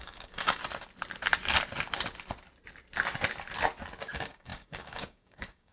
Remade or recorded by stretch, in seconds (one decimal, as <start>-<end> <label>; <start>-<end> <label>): 0.0-0.6 remade; 0.6-4.0 recorded; 4.0-5.7 remade